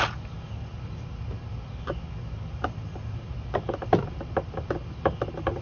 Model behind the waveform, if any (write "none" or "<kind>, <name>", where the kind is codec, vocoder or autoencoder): none